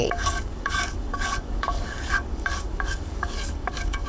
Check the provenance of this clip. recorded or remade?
remade